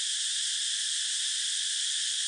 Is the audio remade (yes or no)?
no